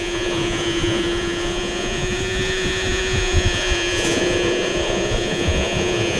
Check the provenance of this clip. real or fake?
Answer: fake